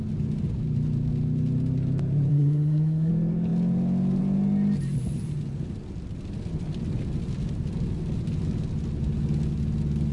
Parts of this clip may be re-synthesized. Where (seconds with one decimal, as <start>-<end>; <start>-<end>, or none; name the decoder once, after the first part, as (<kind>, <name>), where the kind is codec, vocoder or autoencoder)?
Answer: 2.3-3.1 (codec, SNAC)